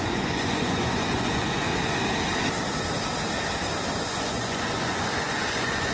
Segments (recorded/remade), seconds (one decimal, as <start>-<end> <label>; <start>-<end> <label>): 0.0-1.7 remade; 1.7-4.0 recorded; 4.0-5.9 remade